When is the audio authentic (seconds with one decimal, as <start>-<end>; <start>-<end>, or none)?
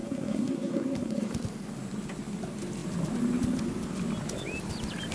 1.3-5.1